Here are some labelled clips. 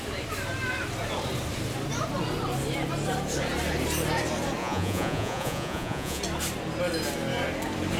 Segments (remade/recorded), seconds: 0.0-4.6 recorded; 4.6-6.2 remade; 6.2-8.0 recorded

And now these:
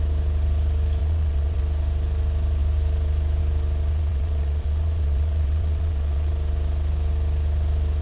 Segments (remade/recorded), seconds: 0.0-1.0 recorded; 1.0-1.6 remade; 1.6-3.9 recorded; 3.9-6.3 remade; 6.3-8.0 recorded

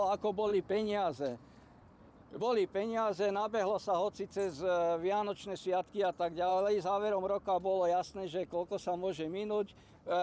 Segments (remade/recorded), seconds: 0.0-0.5 recorded; 0.5-2.4 remade; 2.4-10.2 recorded

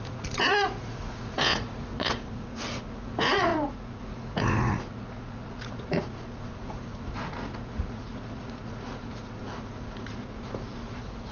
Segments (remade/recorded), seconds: 0.0-11.3 remade

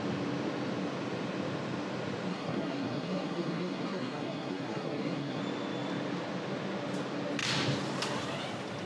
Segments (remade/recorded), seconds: 0.0-2.3 recorded; 2.3-5.4 remade; 5.4-8.9 recorded

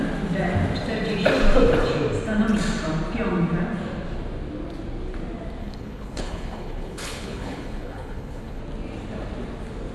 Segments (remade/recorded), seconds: 0.0-5.6 recorded; 5.6-8.6 remade; 8.6-9.9 recorded